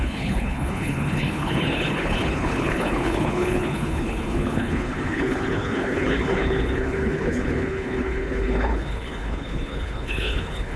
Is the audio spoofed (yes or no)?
yes